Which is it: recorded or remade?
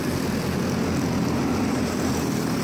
recorded